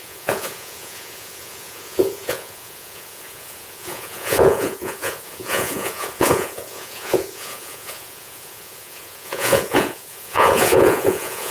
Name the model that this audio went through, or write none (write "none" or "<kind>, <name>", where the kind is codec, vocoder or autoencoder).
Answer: vocoder, Vocos